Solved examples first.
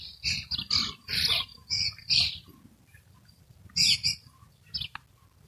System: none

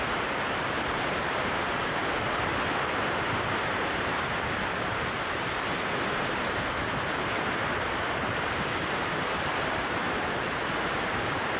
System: vocoder, BigVGAN v2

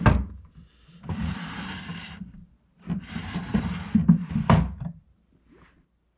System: vocoder, BigVGAN v2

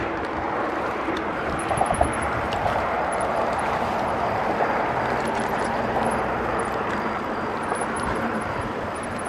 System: vocoder, BigVGAN v2